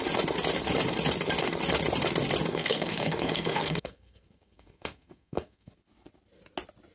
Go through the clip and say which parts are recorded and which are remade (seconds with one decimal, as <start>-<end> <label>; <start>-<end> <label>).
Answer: 0.0-2.5 recorded; 2.5-5.7 remade; 5.7-6.9 recorded